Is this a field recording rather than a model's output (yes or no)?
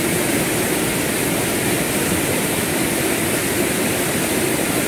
yes